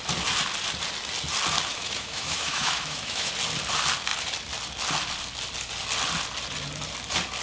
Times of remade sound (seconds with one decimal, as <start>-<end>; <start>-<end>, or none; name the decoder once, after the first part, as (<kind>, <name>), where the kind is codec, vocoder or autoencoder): 1.7-3.3 (autoencoder, DAC-VAE)